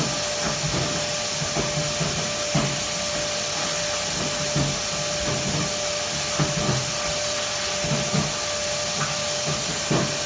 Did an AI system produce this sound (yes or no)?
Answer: no